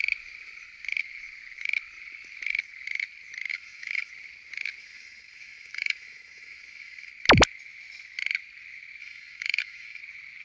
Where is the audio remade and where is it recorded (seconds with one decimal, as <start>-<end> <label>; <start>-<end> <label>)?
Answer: 0.0-3.5 recorded; 3.5-4.1 remade; 4.1-4.8 recorded; 4.8-7.1 remade; 7.1-9.0 recorded; 9.0-10.0 remade; 10.0-10.4 recorded